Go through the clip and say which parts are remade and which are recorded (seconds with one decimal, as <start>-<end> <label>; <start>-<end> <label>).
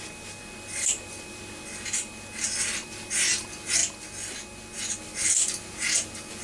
0.0-6.4 recorded